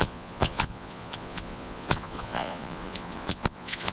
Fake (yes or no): yes